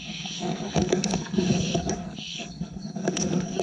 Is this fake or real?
fake